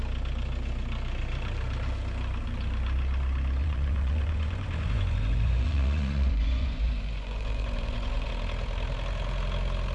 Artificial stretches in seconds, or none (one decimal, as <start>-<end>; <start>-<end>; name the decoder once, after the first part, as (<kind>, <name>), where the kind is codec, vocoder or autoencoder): 3.6-8.3 (vocoder, Vocos)